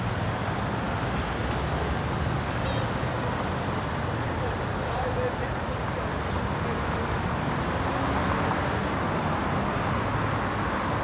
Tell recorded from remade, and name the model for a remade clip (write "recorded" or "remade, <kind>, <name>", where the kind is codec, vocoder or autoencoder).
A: recorded